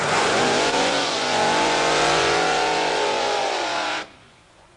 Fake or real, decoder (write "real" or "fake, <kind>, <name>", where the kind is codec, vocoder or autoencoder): fake, vocoder, Vocos